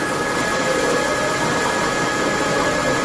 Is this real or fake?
real